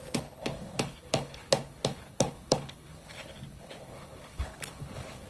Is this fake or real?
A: fake